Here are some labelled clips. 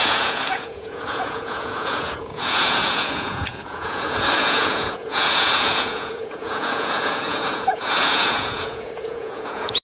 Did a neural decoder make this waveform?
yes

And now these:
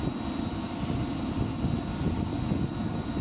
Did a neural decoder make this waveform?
no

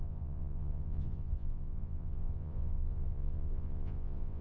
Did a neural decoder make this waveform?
yes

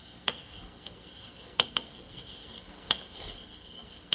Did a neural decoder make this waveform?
yes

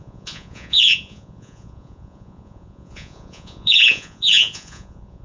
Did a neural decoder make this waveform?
yes